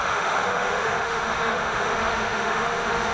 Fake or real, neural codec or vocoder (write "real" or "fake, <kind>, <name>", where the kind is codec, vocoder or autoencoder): fake, autoencoder, DAC-VAE